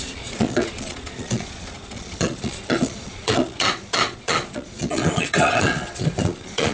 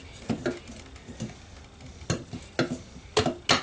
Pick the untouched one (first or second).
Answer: second